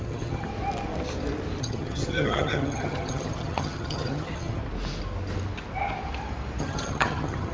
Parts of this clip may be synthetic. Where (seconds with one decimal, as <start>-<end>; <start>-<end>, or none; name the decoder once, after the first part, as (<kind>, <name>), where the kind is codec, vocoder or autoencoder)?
0.0-0.5 (vocoder, HiFi-GAN); 1.6-4.6; 6.6-7.5